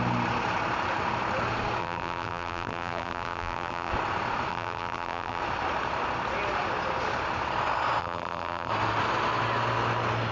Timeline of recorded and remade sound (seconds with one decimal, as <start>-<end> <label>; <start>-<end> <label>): 0.0-1.8 recorded; 1.8-3.9 remade; 3.9-4.5 recorded; 4.5-5.4 remade; 5.4-8.0 recorded; 8.0-8.7 remade; 8.7-10.3 recorded

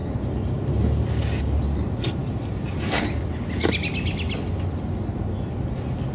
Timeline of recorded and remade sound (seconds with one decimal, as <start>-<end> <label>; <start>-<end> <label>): 0.0-6.1 recorded